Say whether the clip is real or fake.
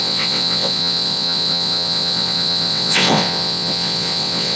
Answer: fake